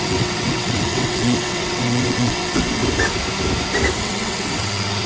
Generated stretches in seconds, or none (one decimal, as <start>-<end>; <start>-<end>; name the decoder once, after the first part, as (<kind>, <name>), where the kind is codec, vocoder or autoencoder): 0.0-2.8 (vocoder, WaveNeXt); 4.0-5.1